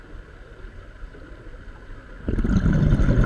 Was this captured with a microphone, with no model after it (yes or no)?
yes